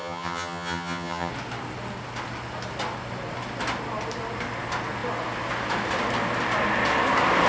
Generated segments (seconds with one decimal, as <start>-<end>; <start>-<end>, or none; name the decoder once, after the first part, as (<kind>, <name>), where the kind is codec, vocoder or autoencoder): 0.0-1.3 (vocoder, HiFi-GAN)